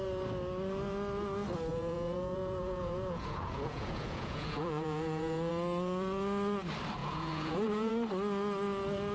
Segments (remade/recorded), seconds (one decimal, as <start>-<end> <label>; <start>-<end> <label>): 0.0-1.7 recorded; 1.7-5.5 remade; 5.5-7.0 recorded; 7.0-7.9 remade; 7.9-9.1 recorded